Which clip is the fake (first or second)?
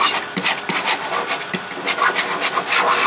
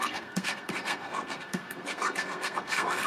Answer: second